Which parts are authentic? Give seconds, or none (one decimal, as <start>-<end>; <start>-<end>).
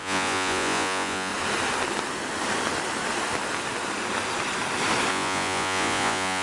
1.3-5.1